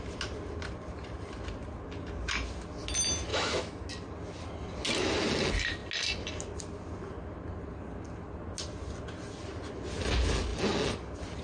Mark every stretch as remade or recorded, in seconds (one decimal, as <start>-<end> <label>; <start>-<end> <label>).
0.0-3.3 recorded; 3.3-3.9 remade; 3.9-11.4 recorded